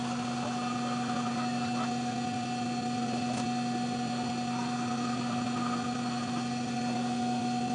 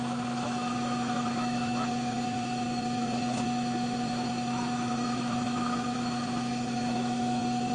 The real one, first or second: first